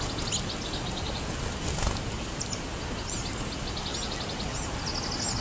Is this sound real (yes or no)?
yes